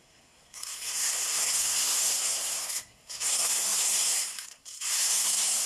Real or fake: fake